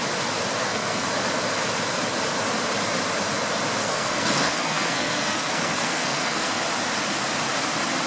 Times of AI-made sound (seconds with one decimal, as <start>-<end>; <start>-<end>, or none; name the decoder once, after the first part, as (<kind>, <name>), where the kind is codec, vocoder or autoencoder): 0.6-1.1 (codec, SNAC); 3.8-6.5